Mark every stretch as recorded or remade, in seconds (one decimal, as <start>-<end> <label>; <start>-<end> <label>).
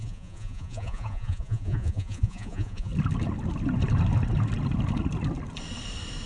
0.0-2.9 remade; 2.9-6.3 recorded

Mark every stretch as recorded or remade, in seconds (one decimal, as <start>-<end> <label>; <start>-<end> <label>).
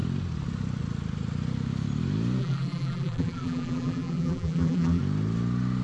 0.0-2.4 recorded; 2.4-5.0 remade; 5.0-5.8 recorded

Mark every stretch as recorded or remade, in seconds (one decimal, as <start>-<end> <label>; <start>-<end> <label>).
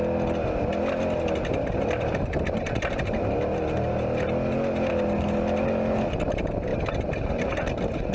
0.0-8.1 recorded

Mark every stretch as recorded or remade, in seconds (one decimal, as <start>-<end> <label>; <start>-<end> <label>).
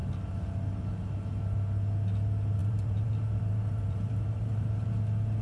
0.0-2.6 recorded; 2.6-5.0 remade; 5.0-5.4 recorded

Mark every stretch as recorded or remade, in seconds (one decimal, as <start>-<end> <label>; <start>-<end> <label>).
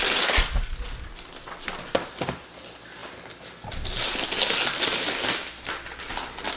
0.0-6.6 recorded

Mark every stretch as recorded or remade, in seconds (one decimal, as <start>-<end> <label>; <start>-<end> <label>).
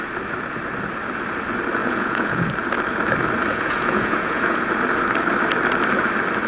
0.0-1.8 recorded; 1.8-2.5 remade; 2.5-3.5 recorded; 3.5-4.6 remade; 4.6-6.5 recorded